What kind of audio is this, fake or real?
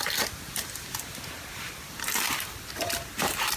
fake